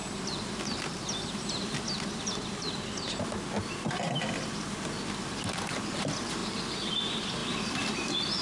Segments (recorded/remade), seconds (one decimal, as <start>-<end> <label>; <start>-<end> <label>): 0.0-2.9 remade; 2.9-7.4 recorded; 7.4-8.4 remade